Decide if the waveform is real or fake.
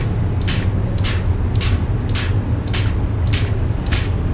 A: real